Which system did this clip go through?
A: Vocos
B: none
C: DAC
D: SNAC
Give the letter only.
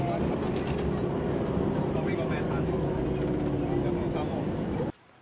B